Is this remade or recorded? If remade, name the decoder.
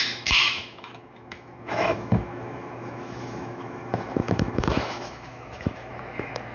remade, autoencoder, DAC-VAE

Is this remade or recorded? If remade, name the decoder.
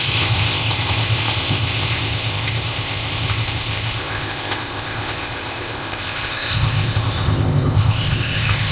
remade, codec, ZipCodec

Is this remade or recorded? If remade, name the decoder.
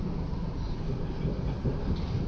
recorded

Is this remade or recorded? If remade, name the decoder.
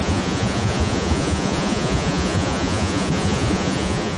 remade, vocoder, Vocos